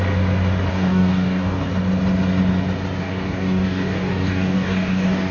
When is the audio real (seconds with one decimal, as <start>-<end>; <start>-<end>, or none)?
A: 0.0-0.7; 1.7-3.0